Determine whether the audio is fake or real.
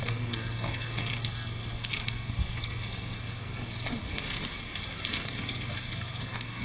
fake